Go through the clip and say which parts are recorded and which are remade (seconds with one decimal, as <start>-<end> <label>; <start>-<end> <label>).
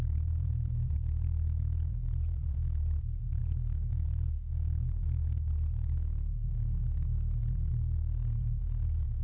0.0-3.4 remade; 3.4-7.4 recorded; 7.4-9.2 remade